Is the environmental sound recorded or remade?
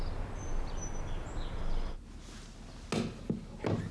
recorded